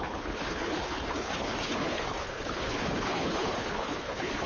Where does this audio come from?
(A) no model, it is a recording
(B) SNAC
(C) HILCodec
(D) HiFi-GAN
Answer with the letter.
C